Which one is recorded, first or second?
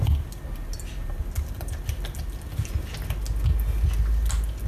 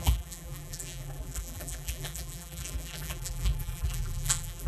first